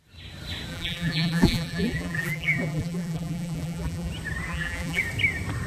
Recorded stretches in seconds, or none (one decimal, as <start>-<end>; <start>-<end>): 0.0-0.7; 4.1-4.5; 5.0-5.7